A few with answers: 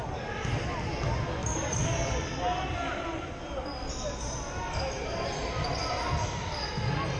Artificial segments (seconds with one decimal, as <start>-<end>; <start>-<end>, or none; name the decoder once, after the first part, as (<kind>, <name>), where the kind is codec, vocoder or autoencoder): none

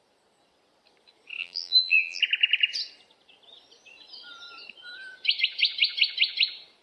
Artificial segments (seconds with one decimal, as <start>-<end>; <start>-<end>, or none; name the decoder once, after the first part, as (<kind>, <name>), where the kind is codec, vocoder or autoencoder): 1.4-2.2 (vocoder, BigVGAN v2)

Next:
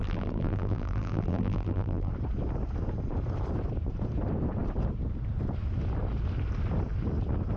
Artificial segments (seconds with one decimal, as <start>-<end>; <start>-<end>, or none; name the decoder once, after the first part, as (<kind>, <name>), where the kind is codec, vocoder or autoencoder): 0.0-2.1 (vocoder, BigVGAN v2)